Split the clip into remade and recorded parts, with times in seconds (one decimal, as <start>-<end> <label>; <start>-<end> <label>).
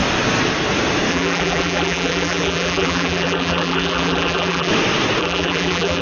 0.0-1.1 recorded; 1.1-4.7 remade; 4.7-5.2 recorded; 5.2-6.0 remade